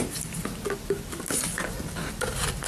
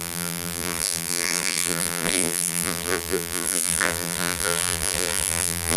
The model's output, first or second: second